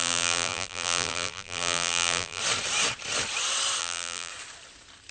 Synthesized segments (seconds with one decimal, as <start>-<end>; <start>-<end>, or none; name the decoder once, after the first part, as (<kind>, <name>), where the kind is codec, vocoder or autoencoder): 0.0-2.4 (vocoder, BigVGAN v2); 3.8-4.3